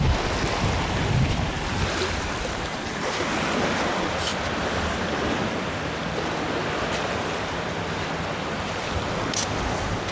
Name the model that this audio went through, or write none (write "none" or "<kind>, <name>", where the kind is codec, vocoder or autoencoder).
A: none